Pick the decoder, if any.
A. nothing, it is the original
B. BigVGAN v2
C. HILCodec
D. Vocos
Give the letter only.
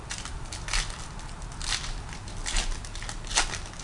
A